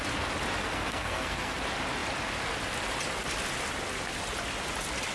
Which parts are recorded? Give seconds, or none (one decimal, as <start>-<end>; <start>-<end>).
0.0-0.6; 1.6-5.1